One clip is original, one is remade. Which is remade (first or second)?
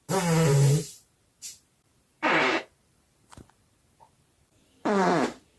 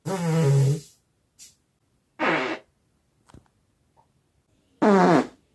first